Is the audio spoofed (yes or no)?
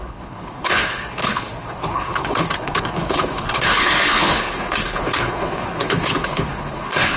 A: yes